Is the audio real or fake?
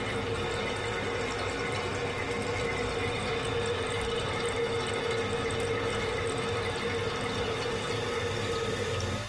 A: real